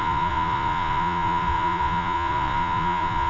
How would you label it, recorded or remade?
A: remade